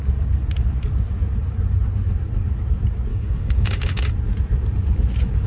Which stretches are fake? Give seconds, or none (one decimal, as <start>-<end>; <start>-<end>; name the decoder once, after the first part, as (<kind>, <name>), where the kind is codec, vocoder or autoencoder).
3.1-4.1 (codec, DAC)